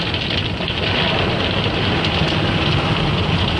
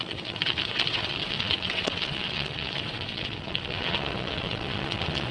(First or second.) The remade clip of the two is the second